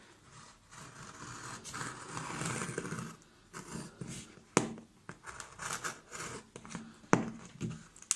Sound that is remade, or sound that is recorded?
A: recorded